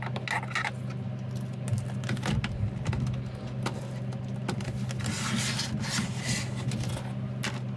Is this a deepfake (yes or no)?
no